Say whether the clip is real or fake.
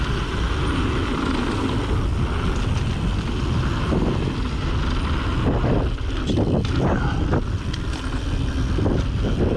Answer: real